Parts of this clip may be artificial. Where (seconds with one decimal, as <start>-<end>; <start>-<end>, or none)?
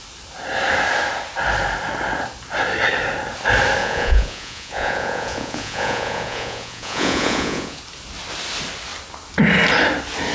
3.8-7.8